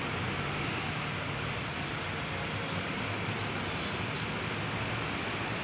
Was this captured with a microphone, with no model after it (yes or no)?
yes